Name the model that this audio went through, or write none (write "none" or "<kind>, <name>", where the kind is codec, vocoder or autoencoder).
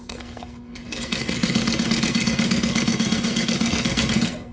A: codec, SNAC